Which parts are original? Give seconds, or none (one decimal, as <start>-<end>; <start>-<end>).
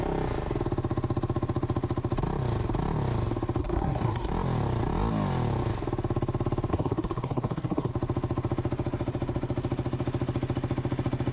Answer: 0.0-3.6; 4.3-6.7; 7.9-11.3